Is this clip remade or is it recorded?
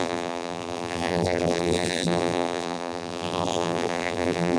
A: remade